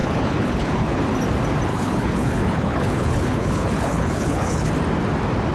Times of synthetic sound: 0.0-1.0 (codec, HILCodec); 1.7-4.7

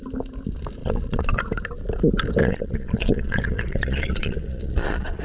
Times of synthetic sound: 0.8-1.4 (vocoder, Vocos); 2.4-5.2